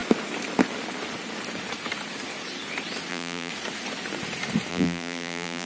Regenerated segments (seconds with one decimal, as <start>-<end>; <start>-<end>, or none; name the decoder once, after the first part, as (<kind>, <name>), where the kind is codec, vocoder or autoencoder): 3.1-3.5 (vocoder, BigVGAN v2); 4.7-5.7